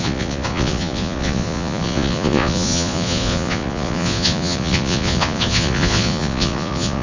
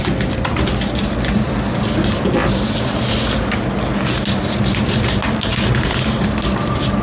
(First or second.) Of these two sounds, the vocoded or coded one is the first